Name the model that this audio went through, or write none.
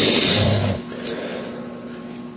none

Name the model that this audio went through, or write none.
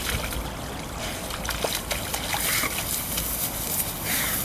none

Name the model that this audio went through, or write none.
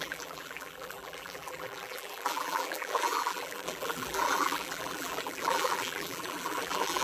vocoder, BigVGAN v2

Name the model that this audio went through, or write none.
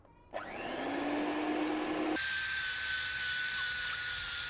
none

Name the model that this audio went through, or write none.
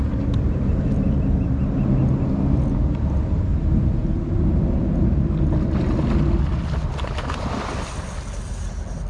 none